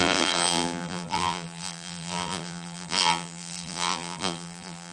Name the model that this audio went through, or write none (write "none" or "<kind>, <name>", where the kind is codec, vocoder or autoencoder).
vocoder, BigVGAN v2